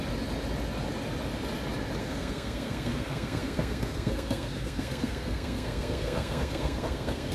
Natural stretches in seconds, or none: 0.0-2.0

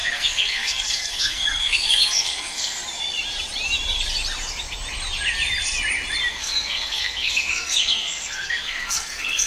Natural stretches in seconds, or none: 2.8-6.3

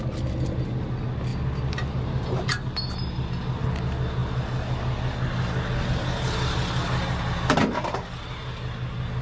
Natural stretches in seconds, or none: 0.0-9.2

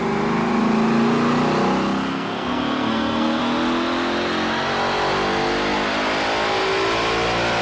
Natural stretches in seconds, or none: 0.0-2.1; 3.4-7.6

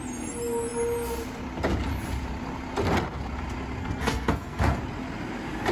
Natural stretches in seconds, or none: 0.0-3.8; 4.8-5.7

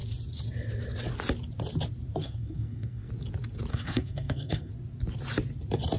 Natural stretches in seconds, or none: 0.0-2.2; 3.1-3.7; 4.7-6.0

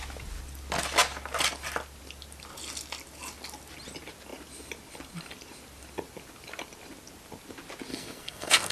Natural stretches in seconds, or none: 0.0-7.9

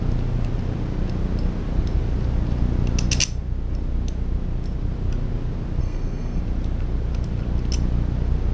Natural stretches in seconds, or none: 0.0-5.8; 6.4-8.5